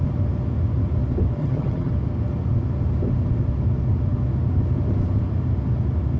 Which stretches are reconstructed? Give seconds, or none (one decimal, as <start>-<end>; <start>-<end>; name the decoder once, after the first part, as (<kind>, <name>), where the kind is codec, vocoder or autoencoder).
1.4-1.9 (vocoder, HiFi-GAN)